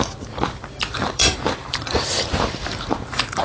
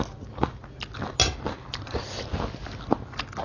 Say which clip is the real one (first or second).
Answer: second